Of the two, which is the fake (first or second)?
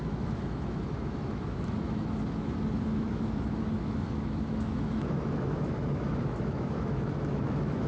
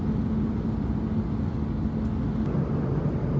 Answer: first